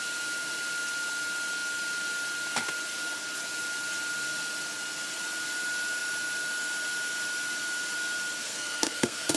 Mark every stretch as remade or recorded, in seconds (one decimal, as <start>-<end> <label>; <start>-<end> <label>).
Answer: 0.0-8.4 recorded; 8.4-9.4 remade